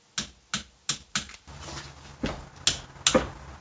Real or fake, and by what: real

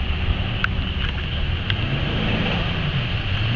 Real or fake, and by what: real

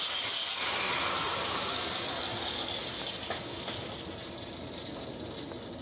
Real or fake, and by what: real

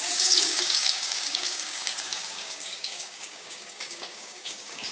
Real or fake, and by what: fake, codec, DAC